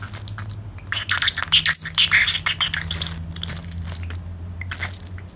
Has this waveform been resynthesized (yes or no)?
no